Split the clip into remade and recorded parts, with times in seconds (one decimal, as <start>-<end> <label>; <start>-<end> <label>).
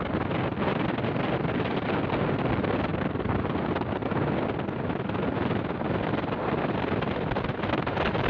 0.0-8.3 recorded